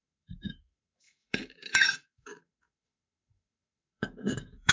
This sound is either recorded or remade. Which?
remade